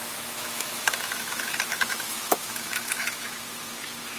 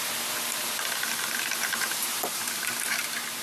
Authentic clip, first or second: second